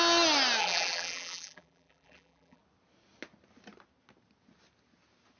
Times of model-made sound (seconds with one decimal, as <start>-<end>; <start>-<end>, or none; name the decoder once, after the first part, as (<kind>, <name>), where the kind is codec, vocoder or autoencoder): 0.6-2.6 (vocoder, BigVGAN v2)